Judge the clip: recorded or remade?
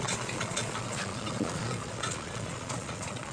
remade